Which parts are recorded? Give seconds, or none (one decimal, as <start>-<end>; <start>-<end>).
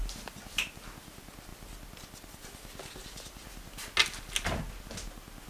0.0-5.5